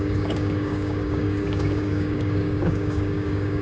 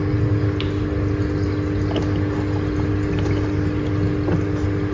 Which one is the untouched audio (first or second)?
second